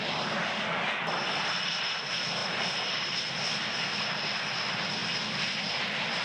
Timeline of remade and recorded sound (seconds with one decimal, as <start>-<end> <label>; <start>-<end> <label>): 0.0-0.4 recorded; 0.4-1.0 remade; 1.0-6.2 recorded